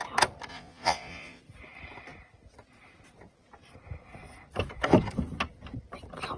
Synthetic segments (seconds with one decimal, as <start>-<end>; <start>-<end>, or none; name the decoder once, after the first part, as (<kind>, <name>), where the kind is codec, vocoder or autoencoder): 0.5-1.4 (vocoder, Vocos)